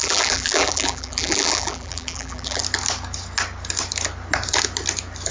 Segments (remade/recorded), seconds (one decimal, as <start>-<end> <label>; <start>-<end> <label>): 0.0-2.6 remade; 2.6-5.3 recorded